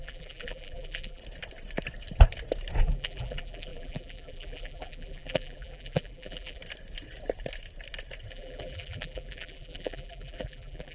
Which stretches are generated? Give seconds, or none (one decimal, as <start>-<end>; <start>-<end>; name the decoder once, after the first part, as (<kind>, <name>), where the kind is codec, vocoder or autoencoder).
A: 0.0-1.2 (vocoder, BigVGAN v2); 2.8-6.6; 8.3-10.9